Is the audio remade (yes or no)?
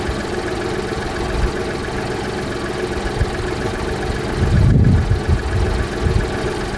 no